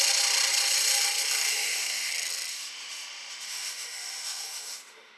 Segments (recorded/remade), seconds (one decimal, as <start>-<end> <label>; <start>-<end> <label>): 0.0-1.5 recorded; 1.5-2.1 remade; 2.1-2.5 recorded; 2.5-5.2 remade